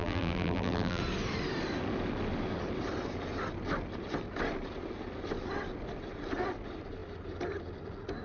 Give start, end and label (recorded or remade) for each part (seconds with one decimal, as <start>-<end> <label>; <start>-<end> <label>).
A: 0.0-1.0 remade; 1.0-8.2 recorded